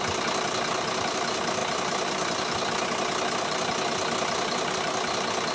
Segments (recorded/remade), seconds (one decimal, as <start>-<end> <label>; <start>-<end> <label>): 0.0-5.5 recorded